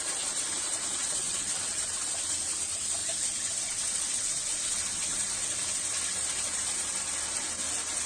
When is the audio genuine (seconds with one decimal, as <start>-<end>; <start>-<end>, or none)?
0.0-1.0; 1.8-8.1

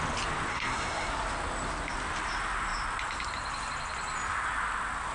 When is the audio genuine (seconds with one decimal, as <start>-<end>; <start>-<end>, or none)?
0.0-0.5; 1.1-5.1